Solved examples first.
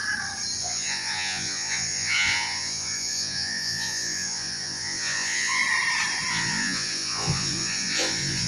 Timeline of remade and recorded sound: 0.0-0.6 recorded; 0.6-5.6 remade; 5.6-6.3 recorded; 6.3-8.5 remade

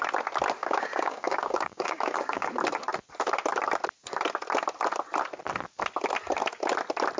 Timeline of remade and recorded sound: 0.0-0.6 recorded; 0.6-2.5 remade; 2.5-7.2 recorded